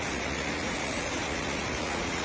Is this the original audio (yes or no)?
no